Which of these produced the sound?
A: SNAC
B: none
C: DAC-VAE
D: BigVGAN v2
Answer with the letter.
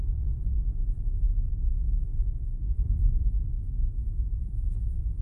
D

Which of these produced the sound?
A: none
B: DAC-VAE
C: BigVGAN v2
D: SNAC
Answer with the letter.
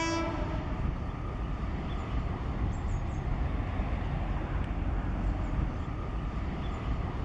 A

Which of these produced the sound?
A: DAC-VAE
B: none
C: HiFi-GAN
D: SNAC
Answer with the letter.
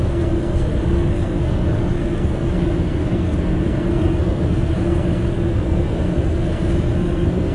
D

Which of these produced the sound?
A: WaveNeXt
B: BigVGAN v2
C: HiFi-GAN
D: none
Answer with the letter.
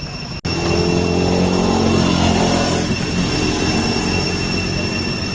D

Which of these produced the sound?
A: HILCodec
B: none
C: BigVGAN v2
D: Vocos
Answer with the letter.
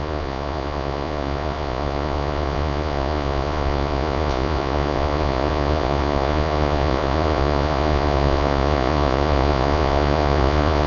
D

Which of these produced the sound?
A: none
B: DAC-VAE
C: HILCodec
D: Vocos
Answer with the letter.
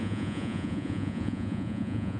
D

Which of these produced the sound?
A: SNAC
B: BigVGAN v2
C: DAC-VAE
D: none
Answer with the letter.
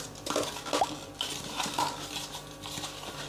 D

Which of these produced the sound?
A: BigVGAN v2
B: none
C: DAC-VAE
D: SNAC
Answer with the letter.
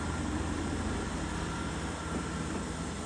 B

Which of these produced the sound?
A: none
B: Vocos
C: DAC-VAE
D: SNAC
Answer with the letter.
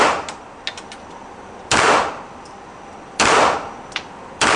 A